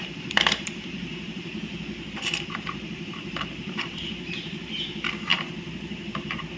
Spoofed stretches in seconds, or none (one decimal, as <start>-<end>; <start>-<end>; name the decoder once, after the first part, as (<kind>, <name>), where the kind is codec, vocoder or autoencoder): 0.0-1.5 (vocoder, BigVGAN v2); 2.1-6.6